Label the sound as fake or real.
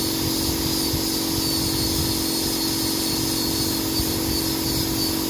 real